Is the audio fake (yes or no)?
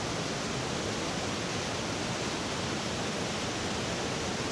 no